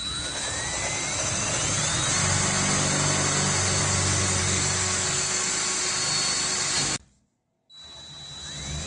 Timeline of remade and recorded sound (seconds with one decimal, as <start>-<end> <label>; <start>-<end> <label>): 0.0-4.4 recorded; 4.4-5.5 remade; 5.5-8.9 recorded